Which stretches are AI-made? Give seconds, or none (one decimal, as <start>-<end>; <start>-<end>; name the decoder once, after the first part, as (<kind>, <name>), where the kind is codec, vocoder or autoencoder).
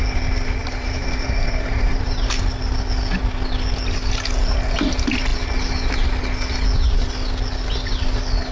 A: 0.6-2.3 (vocoder, BigVGAN v2)